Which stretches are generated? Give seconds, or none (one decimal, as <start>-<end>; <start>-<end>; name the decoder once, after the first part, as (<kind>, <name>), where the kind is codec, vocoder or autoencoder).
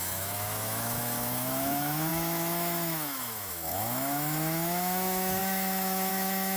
0.0-6.6 (autoencoder, DAC-VAE)